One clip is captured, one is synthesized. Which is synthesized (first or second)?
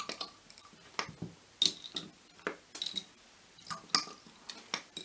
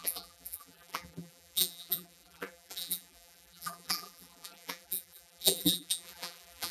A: second